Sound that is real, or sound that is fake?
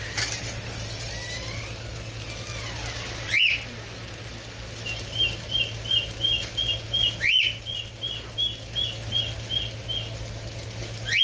real